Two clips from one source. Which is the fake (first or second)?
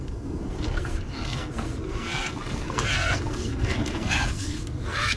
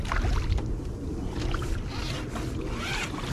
first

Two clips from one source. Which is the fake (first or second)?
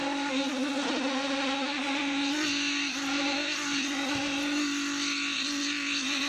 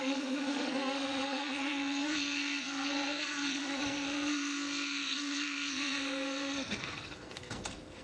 second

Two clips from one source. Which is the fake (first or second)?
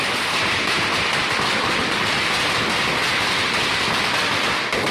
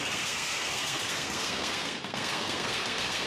second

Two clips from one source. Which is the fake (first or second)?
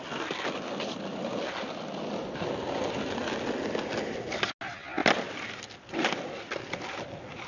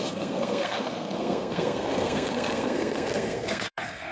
second